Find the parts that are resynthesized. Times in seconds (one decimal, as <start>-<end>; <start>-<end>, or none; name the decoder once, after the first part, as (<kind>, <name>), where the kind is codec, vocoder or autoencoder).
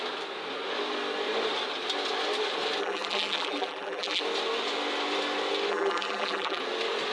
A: 2.8-4.2 (vocoder, BigVGAN v2); 5.7-6.6